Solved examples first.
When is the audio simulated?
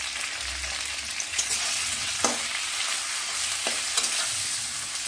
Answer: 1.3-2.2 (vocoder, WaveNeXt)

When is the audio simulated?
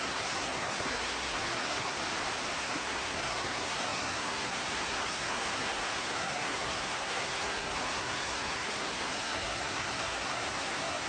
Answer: 0.0-2.0 (codec, SNAC); 2.6-11.1